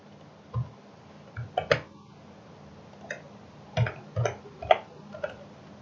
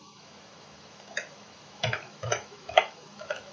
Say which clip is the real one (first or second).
first